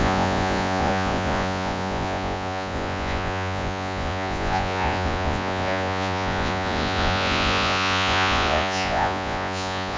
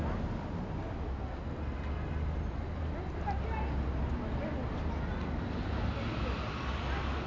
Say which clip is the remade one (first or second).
first